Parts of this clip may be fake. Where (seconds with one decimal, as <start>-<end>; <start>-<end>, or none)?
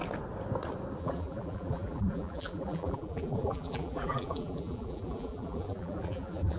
1.0-6.6